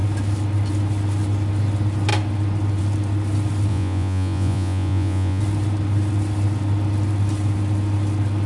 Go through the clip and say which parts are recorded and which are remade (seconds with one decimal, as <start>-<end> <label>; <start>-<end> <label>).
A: 0.0-3.7 recorded; 3.7-5.4 remade; 5.4-8.5 recorded